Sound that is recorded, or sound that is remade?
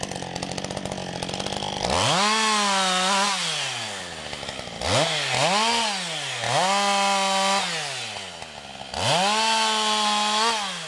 recorded